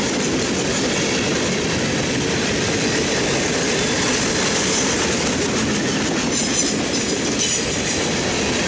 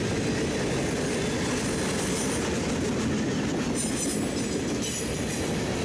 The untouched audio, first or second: second